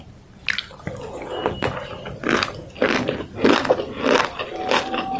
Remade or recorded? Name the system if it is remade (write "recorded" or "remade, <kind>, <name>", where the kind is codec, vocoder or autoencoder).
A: recorded